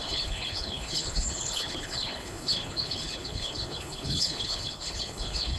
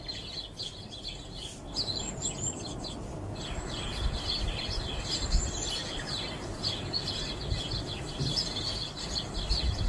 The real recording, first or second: second